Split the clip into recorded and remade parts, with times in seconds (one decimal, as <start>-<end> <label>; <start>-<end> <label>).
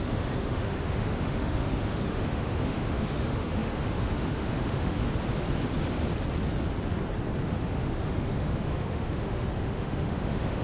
0.0-5.0 remade; 5.0-7.4 recorded; 7.4-10.6 remade